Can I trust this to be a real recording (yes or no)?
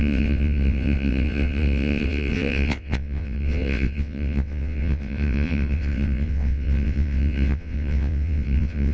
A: no